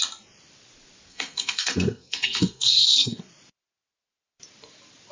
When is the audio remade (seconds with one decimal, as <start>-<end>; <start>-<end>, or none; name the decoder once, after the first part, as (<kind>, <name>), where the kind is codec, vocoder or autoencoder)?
1.1-3.2 (codec, SNAC)